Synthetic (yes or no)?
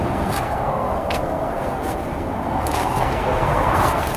yes